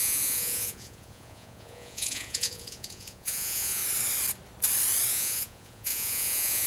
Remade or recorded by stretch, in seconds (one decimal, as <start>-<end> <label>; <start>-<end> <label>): 0.0-3.8 remade; 3.8-5.1 recorded; 5.1-6.7 remade